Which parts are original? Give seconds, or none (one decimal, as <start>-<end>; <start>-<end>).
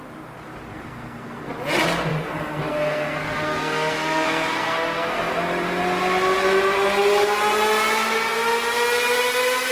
0.0-0.7; 1.5-2.1; 5.4-9.7